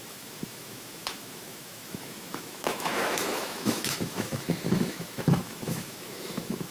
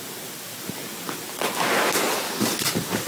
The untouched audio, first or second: second